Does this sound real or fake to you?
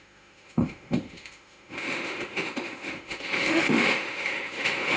fake